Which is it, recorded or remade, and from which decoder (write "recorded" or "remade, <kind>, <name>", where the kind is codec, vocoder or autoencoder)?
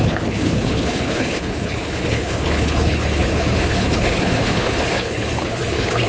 remade, codec, HILCodec